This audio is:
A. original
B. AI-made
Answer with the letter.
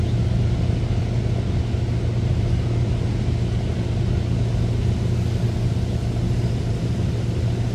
A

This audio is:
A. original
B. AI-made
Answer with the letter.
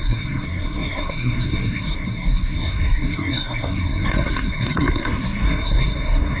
B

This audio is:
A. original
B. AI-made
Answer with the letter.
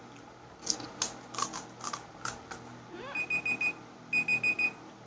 A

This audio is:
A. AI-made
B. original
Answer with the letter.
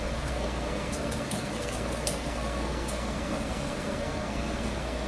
A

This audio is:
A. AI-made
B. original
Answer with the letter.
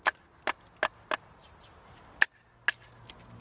B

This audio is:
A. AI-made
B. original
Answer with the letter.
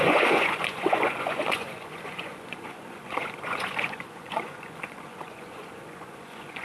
A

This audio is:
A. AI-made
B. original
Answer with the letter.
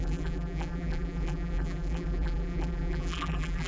A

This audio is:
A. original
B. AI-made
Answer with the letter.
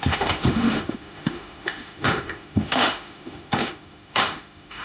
B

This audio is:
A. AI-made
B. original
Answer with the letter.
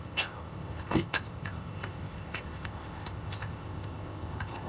A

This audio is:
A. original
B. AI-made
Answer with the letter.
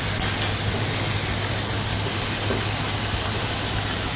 A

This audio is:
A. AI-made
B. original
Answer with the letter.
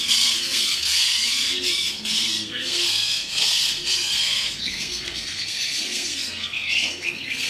A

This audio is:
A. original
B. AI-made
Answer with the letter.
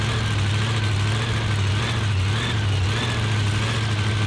A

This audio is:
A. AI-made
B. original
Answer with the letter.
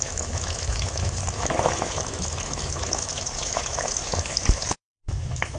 A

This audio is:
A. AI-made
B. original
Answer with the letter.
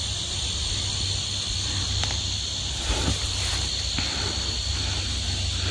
B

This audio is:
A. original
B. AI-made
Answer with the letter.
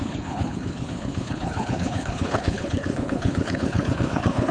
B